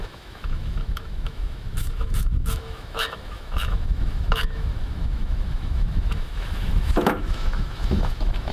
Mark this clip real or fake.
fake